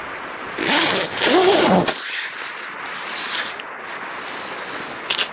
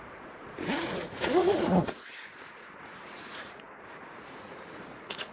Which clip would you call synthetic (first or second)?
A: second